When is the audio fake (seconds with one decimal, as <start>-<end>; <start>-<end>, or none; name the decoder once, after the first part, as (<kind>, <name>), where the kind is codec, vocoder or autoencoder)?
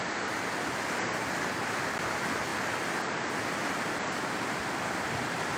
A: 0.0-2.5 (vocoder, BigVGAN v2); 3.9-5.6